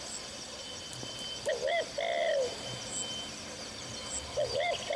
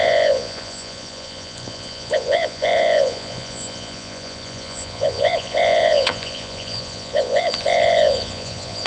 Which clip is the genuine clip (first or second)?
first